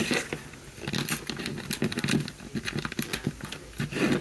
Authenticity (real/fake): real